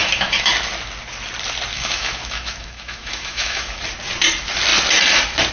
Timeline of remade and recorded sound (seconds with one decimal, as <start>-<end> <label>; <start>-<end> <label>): 0.0-0.5 remade; 0.5-1.7 recorded; 1.7-3.8 remade; 3.8-5.5 recorded